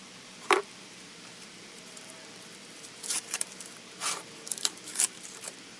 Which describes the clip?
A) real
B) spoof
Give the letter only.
B